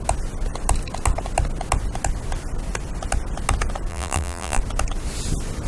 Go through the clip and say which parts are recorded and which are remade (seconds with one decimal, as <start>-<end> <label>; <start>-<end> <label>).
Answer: 0.0-3.9 recorded; 3.9-4.6 remade; 4.6-5.7 recorded